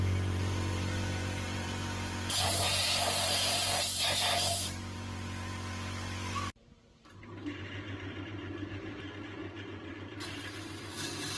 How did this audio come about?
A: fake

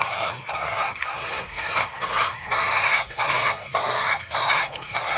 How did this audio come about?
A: fake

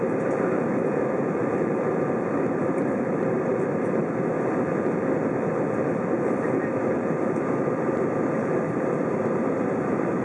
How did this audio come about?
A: fake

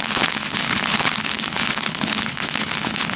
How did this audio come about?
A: fake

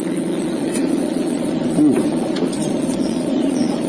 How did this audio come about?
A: fake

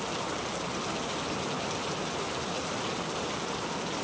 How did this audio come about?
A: real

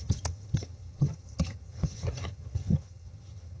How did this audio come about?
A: fake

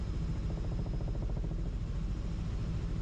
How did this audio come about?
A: real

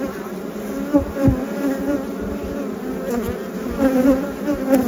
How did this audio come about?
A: real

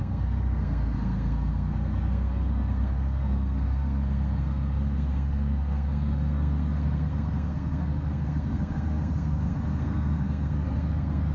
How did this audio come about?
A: fake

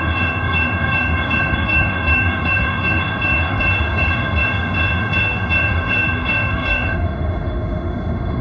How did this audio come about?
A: fake